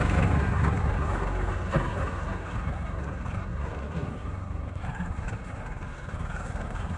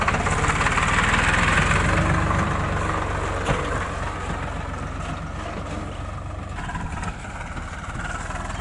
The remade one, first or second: first